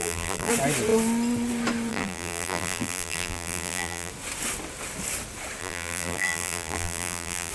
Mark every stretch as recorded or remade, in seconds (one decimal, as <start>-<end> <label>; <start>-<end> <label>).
0.0-0.5 remade; 0.5-1.9 recorded; 1.9-4.1 remade; 4.1-5.6 recorded; 5.6-7.5 remade